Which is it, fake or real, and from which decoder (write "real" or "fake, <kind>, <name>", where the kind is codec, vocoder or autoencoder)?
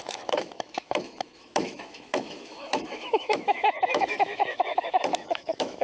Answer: fake, autoencoder, DAC-VAE